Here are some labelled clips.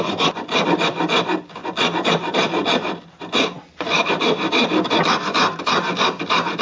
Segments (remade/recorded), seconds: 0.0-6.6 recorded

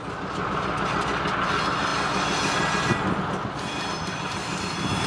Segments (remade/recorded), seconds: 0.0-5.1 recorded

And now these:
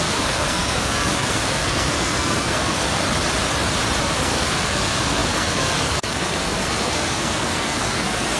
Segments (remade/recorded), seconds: 0.0-3.0 remade; 3.0-4.0 recorded; 4.0-8.4 remade

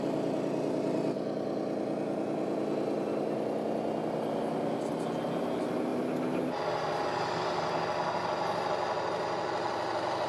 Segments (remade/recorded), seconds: 0.0-10.3 recorded

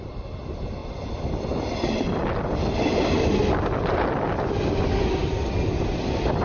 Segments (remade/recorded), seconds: 0.0-6.4 recorded